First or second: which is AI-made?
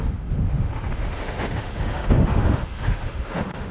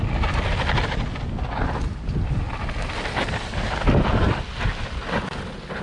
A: first